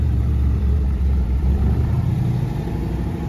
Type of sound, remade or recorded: remade